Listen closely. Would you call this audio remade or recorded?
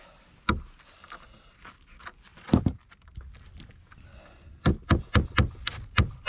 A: recorded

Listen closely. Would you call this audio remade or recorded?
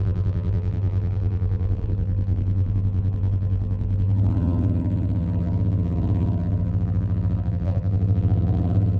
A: remade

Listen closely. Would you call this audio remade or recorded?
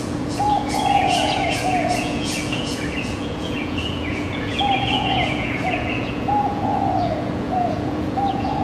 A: remade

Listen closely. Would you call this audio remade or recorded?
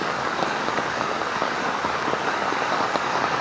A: remade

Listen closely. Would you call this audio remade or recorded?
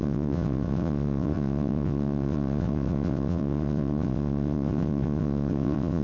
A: remade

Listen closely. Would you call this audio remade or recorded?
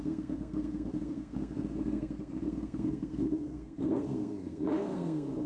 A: remade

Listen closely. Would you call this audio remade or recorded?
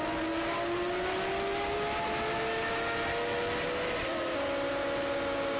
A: recorded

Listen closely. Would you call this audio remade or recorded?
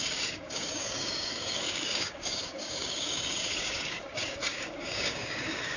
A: remade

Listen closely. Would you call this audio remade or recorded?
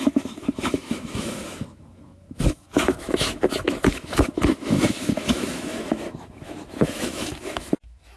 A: remade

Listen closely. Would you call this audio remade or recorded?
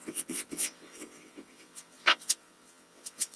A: remade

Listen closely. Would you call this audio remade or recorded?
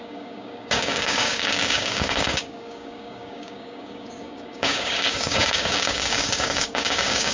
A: remade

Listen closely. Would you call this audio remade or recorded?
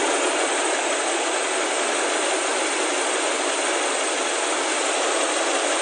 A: recorded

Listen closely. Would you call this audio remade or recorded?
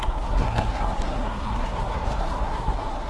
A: remade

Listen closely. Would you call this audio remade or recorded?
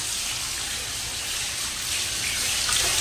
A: recorded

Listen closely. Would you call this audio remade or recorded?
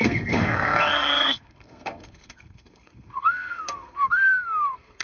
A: remade